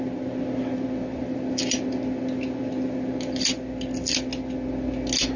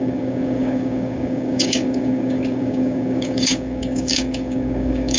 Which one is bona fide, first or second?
first